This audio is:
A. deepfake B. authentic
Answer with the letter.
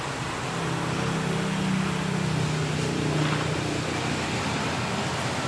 B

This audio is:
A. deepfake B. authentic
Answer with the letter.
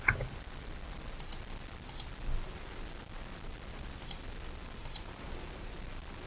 B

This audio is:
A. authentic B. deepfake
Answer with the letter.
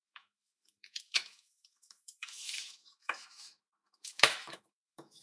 B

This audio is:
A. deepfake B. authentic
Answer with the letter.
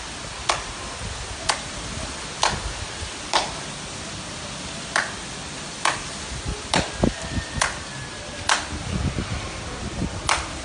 B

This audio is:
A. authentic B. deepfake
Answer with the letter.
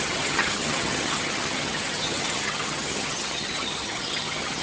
B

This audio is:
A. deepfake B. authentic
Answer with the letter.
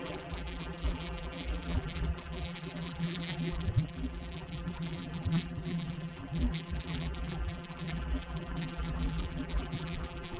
A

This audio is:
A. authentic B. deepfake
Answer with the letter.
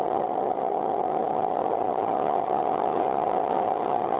B